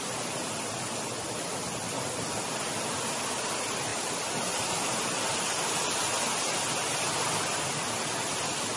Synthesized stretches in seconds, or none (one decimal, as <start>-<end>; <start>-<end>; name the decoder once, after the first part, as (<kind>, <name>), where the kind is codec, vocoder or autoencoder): none